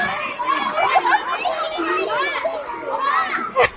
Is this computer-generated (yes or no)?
no